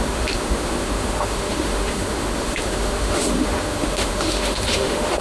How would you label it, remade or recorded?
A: remade